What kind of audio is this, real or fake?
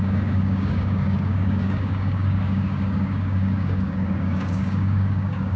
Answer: fake